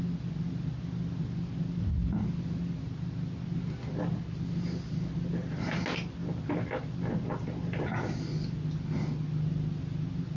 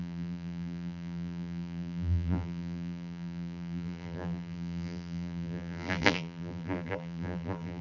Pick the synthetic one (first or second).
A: second